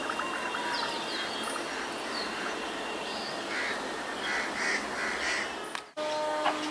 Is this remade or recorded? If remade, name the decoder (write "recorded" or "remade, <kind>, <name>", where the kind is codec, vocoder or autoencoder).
recorded